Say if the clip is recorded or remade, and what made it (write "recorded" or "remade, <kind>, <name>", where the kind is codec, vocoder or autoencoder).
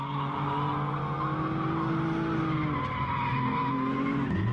recorded